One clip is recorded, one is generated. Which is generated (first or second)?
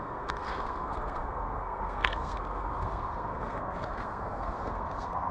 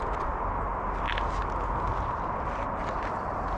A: first